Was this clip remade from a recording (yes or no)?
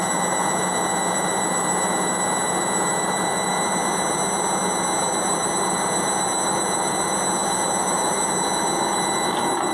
no